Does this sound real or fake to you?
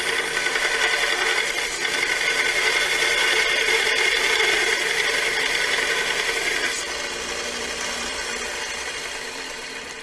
real